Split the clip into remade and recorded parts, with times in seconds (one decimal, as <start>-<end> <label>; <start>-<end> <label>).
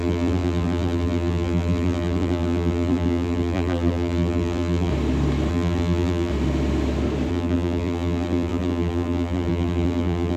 0.0-4.9 remade; 4.9-5.5 recorded; 5.5-6.3 remade; 6.3-7.3 recorded; 7.3-10.4 remade